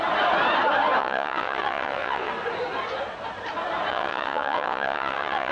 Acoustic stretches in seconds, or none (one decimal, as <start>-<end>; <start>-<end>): 0.0-1.0; 2.3-3.9